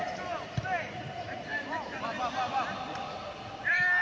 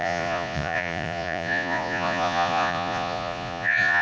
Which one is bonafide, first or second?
first